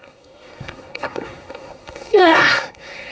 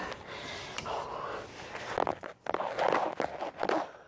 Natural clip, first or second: second